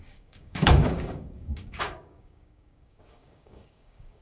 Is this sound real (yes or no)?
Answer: no